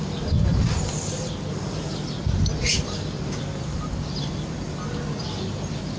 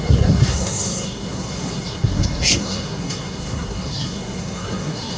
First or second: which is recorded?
first